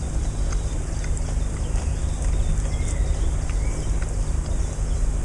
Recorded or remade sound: recorded